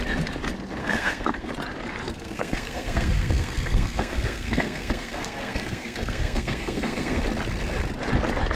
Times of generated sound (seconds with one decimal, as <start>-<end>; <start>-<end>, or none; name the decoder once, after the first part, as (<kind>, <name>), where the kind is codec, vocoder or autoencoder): 0.8-1.5 (codec, SNAC); 2.0-7.2